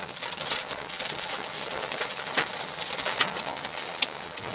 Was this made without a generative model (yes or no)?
no